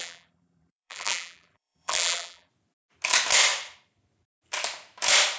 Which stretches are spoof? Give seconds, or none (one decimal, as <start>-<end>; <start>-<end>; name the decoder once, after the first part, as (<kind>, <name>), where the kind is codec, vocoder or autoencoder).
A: 0.0-2.5 (vocoder, BigVGAN v2)